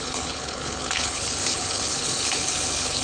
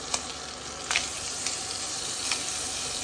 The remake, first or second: first